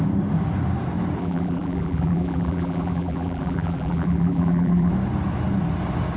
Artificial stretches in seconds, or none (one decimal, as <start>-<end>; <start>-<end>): 1.2-4.9